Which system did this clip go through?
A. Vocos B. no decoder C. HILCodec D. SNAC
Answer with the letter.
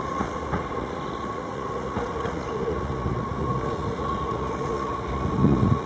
A